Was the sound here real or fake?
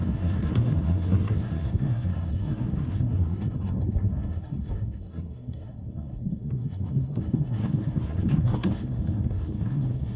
fake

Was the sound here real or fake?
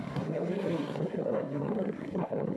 fake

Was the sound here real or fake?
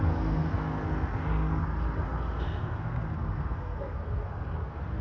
fake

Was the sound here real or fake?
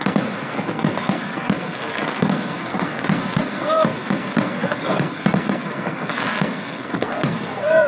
fake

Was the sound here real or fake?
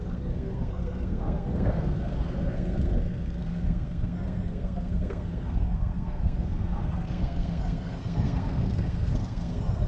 fake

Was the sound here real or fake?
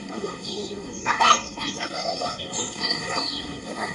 fake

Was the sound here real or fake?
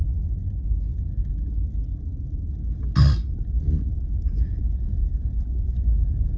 real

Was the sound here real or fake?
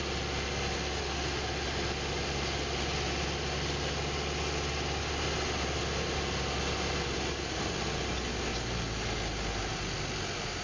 real